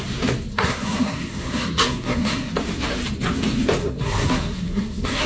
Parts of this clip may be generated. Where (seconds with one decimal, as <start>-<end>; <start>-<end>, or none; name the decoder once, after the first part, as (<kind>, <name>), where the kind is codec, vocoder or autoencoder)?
0.5-2.5 (codec, SNAC); 3.8-5.3